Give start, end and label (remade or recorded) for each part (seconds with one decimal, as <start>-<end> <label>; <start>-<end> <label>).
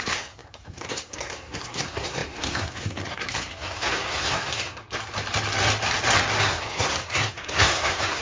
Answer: 0.0-4.8 remade; 4.8-6.4 recorded; 6.4-8.2 remade